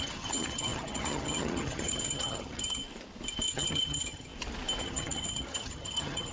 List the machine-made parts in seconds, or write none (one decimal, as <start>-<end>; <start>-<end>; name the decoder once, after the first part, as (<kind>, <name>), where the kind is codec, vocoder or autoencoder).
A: 0.0-2.8 (vocoder, HiFi-GAN); 3.5-4.3; 4.8-6.3